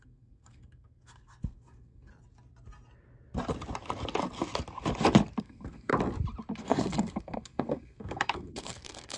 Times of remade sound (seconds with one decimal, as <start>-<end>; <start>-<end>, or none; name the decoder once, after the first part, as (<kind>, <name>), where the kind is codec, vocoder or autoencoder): 0.0-2.1 (codec, SNAC); 5.4-5.9; 6.6-9.2